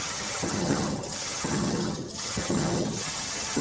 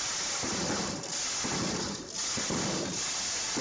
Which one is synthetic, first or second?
first